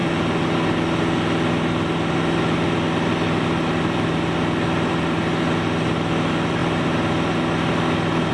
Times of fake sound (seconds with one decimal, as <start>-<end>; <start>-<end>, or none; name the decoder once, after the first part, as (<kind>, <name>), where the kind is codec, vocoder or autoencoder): none